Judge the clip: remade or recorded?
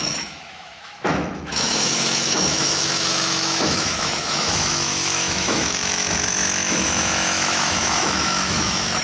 remade